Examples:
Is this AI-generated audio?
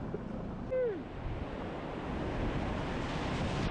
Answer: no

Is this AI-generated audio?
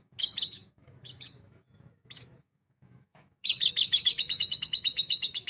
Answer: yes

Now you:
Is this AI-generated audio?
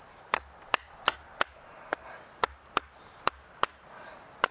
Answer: no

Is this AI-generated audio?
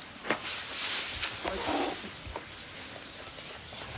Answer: no